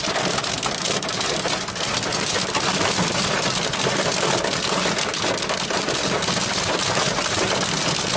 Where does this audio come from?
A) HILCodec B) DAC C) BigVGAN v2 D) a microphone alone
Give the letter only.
D